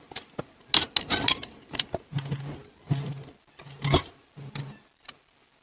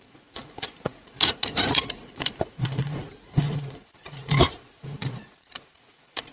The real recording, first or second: first